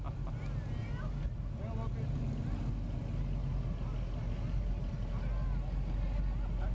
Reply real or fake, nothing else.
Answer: real